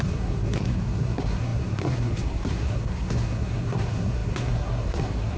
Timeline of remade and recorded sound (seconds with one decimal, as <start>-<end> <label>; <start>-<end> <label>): 0.0-5.4 remade

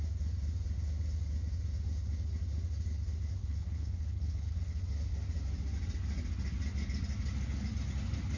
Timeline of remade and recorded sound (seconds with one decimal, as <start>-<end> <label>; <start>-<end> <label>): 0.0-3.4 recorded; 3.4-4.8 remade; 4.8-8.4 recorded

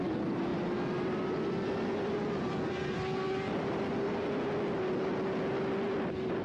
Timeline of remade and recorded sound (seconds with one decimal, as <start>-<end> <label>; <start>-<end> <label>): 0.0-6.4 recorded

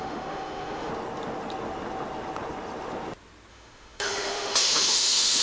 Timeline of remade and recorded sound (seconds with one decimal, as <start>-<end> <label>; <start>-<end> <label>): 0.0-0.9 remade; 0.9-3.5 recorded; 3.5-5.4 remade

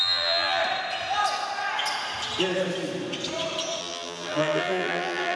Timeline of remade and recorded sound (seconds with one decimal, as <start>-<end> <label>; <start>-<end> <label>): 0.0-0.6 remade; 0.6-3.8 recorded; 3.8-5.4 remade

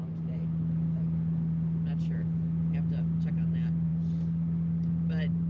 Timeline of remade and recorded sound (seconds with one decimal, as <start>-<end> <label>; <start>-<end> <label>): 0.0-5.5 recorded